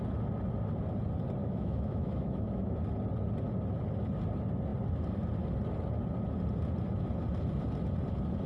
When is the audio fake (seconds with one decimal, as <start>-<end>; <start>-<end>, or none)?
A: 1.4-2.8